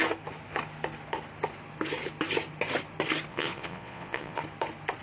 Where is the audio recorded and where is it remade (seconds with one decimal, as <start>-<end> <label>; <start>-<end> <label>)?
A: 0.0-3.3 recorded; 3.3-4.4 remade; 4.4-5.0 recorded